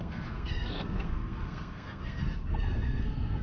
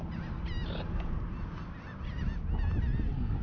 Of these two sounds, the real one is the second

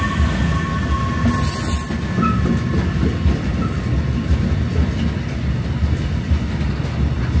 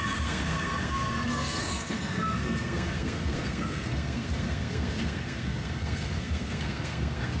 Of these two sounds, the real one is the first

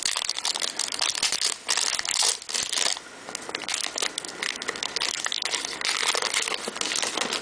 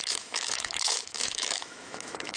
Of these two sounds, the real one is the first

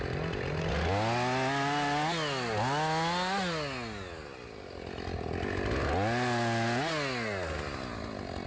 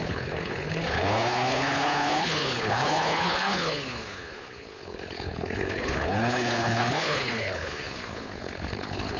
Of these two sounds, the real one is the first